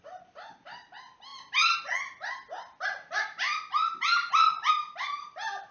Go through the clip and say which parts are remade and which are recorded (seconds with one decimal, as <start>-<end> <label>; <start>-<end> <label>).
0.0-5.7 recorded